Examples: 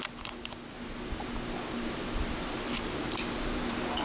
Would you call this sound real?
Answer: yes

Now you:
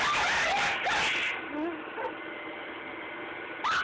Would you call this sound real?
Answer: yes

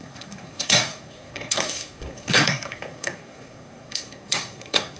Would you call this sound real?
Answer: no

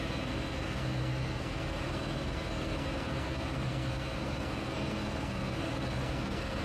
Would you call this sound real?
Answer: no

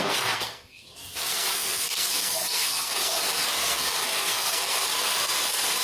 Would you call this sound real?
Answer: no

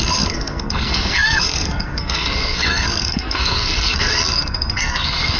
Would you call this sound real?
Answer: no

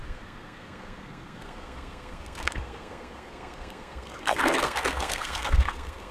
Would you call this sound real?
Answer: no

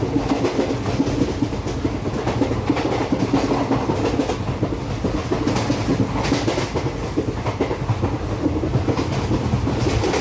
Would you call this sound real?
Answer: yes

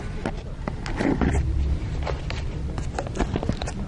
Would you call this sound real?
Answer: yes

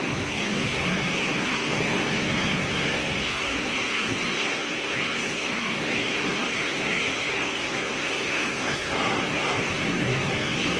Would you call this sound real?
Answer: no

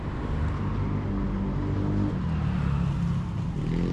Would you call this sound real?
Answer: yes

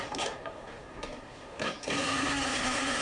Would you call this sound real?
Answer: no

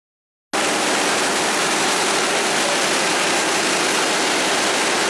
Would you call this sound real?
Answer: yes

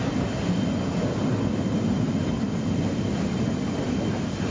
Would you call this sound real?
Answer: yes